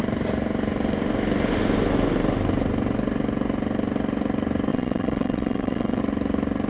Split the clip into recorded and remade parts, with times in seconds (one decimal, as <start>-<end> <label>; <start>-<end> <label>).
0.0-4.7 recorded; 4.7-6.0 remade; 6.0-6.7 recorded